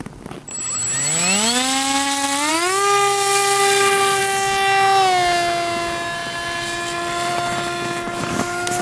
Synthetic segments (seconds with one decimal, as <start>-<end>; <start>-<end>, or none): none